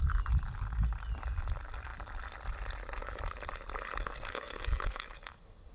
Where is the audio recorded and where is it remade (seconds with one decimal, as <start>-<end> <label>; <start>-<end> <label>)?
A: 0.0-4.0 recorded; 4.0-5.7 remade